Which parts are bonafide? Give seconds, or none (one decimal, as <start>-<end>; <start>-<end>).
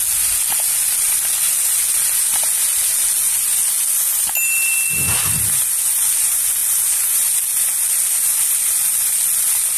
0.0-9.8